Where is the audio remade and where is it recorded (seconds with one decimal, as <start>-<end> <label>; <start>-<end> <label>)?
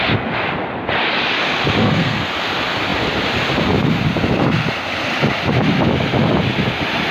0.0-1.8 recorded; 1.8-2.3 remade; 2.3-7.1 recorded